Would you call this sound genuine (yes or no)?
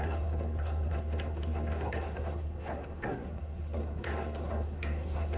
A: no